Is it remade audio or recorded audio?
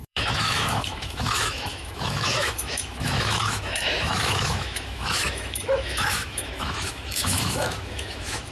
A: remade